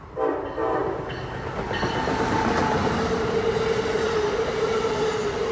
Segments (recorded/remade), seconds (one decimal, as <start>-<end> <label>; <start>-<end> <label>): 0.0-5.5 recorded